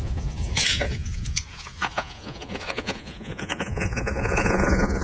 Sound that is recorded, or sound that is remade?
remade